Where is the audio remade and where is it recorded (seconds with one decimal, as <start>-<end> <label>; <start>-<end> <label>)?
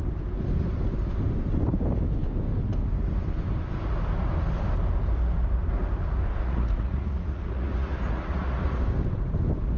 0.0-6.4 recorded; 6.4-8.8 remade; 8.8-9.8 recorded